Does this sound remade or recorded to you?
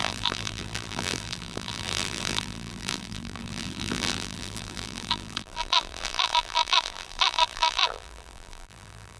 remade